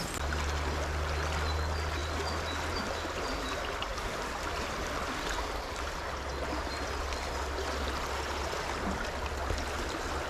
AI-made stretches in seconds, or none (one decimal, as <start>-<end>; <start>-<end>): 3.9-4.5; 9.4-10.3